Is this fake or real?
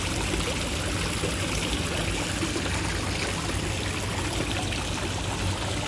real